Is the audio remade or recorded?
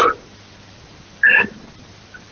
recorded